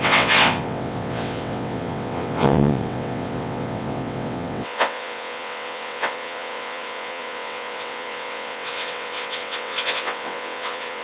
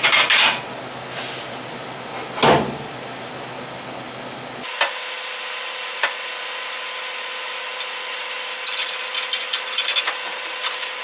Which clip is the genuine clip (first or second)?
second